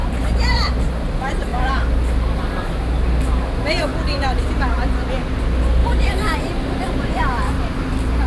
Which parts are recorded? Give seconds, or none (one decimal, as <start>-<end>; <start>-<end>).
0.8-3.9; 4.5-5.8; 7.9-8.3